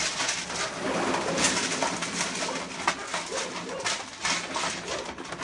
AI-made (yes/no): no